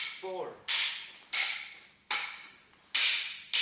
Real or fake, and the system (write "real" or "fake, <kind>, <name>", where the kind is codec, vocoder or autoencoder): real